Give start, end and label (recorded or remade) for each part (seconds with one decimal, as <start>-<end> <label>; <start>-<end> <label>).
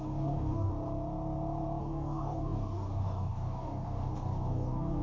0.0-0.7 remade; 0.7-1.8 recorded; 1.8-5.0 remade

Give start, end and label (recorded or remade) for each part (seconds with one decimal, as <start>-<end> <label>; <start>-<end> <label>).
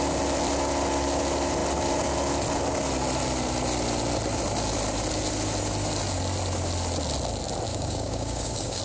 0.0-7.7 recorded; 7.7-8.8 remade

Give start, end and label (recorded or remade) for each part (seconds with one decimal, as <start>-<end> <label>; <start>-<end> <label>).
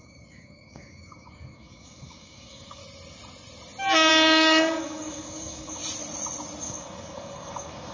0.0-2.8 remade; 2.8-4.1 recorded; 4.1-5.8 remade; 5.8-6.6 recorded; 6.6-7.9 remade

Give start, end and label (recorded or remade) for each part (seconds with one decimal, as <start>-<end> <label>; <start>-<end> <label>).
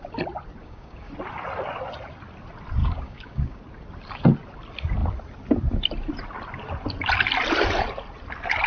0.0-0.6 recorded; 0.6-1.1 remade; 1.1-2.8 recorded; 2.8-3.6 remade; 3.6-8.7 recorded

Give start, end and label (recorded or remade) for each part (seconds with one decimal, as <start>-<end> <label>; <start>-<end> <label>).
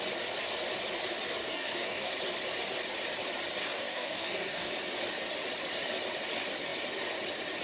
0.0-1.4 recorded; 1.4-2.1 remade; 2.1-3.6 recorded; 3.6-4.7 remade; 4.7-7.6 recorded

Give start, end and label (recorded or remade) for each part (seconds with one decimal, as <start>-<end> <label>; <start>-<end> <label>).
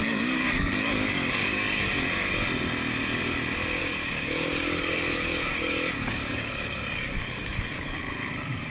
0.0-1.8 remade; 1.8-3.8 recorded; 3.8-8.0 remade; 8.0-8.7 recorded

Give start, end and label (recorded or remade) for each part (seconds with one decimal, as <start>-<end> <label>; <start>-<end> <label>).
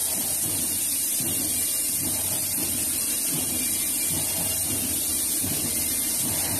0.0-6.6 recorded